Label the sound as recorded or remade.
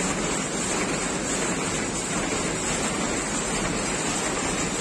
recorded